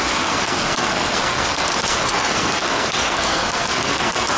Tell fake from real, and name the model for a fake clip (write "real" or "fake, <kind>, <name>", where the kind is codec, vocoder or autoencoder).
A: fake, codec, SNAC